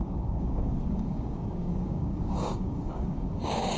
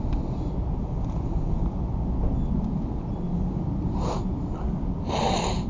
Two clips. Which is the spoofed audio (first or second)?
first